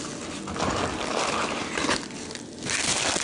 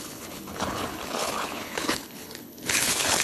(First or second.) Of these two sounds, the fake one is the second